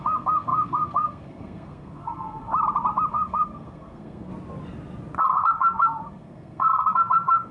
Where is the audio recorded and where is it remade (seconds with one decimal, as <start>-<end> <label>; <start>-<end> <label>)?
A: 0.0-2.5 remade; 2.5-3.1 recorded; 3.1-4.3 remade; 4.3-5.2 recorded; 5.2-7.5 remade